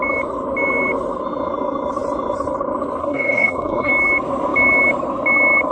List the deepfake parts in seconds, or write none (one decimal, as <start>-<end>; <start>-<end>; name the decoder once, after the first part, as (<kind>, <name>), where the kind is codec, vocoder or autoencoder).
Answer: 3.0-3.9 (codec, SNAC)